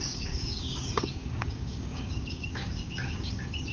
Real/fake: fake